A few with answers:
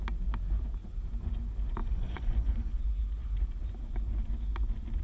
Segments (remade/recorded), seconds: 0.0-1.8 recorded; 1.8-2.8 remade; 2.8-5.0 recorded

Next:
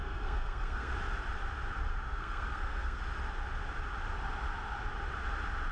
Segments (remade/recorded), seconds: 0.0-0.9 remade; 0.9-1.9 recorded; 1.9-3.0 remade; 3.0-5.7 recorded

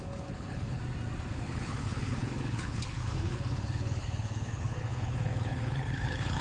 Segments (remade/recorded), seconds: 0.0-0.8 remade; 0.8-1.3 recorded; 1.3-6.4 remade

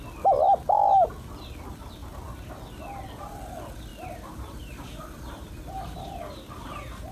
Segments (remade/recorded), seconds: 0.0-3.9 recorded; 3.9-6.2 remade; 6.2-7.1 recorded

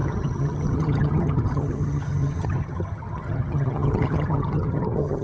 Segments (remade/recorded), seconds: 0.0-5.2 remade